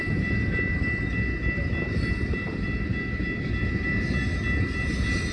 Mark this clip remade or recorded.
recorded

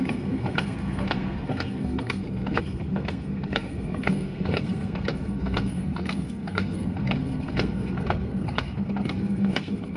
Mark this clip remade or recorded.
remade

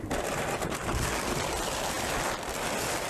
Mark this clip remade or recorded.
recorded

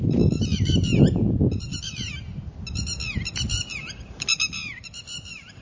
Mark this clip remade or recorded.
recorded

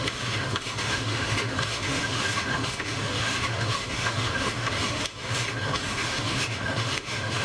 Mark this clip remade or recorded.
remade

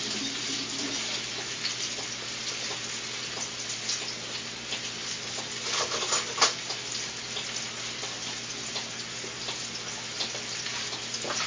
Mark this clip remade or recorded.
recorded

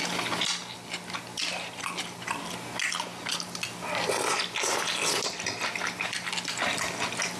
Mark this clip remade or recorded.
recorded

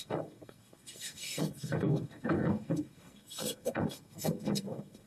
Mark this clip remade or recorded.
remade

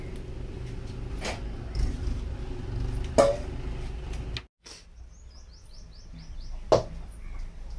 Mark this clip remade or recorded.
recorded